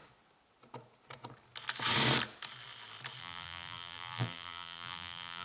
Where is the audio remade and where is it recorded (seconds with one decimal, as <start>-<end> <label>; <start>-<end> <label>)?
0.0-3.2 recorded; 3.2-5.4 remade